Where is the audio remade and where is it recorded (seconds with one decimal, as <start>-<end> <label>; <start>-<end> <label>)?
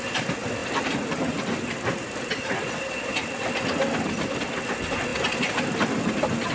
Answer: 0.0-6.5 recorded